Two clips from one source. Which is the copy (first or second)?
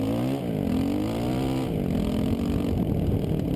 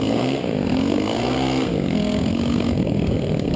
second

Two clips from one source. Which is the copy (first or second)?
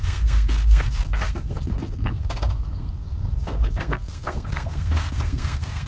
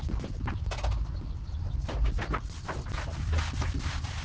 first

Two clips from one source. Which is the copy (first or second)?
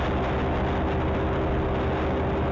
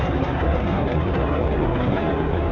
second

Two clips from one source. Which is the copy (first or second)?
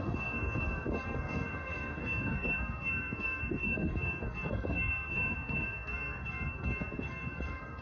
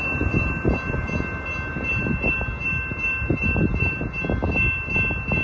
first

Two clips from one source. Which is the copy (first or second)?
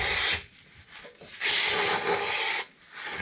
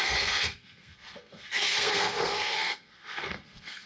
second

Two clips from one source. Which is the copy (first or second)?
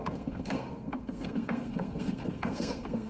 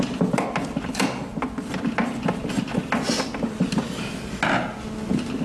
first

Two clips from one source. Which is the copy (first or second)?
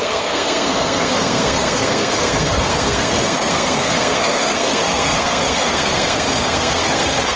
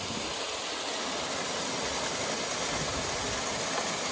first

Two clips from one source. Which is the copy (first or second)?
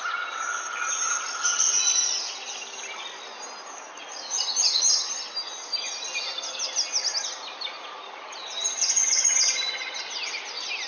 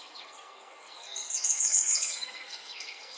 second